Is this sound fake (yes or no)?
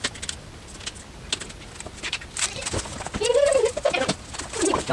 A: no